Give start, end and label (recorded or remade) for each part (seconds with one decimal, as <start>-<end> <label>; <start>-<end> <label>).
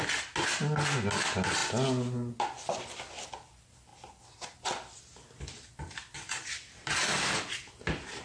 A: 0.0-8.2 recorded